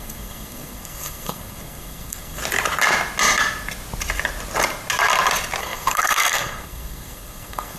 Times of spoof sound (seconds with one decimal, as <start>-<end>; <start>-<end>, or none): 0.0-2.4; 5.6-7.8